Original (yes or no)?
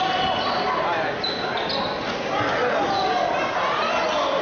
yes